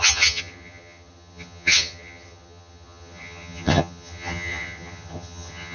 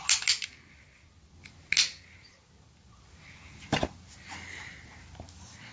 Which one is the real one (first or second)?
second